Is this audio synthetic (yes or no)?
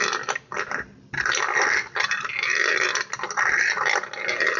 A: no